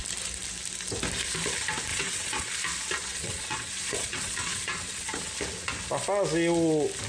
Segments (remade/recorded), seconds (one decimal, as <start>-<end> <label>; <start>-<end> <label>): 0.0-1.9 recorded; 1.9-2.5 remade; 2.5-3.0 recorded; 3.0-5.3 remade; 5.3-7.1 recorded